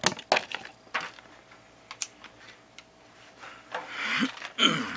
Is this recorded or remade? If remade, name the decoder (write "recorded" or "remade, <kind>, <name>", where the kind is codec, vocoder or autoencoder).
recorded